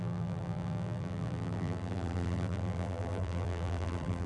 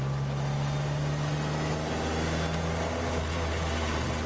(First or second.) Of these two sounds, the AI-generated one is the first